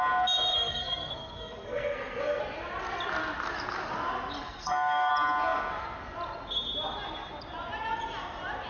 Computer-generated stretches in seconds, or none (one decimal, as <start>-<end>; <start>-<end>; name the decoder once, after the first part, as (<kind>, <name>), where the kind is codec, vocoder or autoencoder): 0.5-2.4 (codec, SNAC); 4.4-5.1